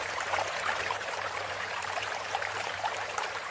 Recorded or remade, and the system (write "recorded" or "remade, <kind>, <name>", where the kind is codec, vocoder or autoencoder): remade, vocoder, BigVGAN v2